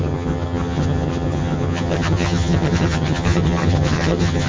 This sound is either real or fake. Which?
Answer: fake